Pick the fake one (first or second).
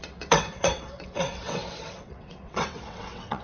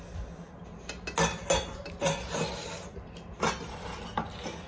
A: first